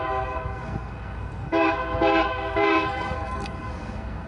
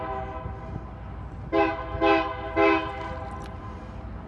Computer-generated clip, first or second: first